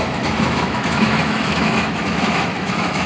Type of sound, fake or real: fake